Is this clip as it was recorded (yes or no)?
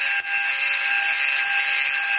yes